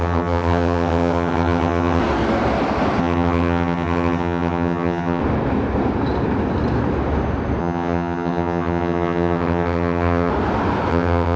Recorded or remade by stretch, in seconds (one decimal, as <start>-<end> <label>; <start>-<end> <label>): 0.0-2.0 remade; 2.0-3.0 recorded; 3.0-5.2 remade; 5.2-7.6 recorded; 7.6-10.3 remade; 10.3-10.9 recorded; 10.9-11.4 remade